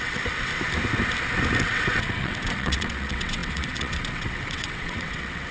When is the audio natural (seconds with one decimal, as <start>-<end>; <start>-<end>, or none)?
0.5-1.6